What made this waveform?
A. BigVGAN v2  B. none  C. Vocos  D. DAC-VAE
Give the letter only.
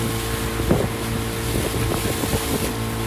B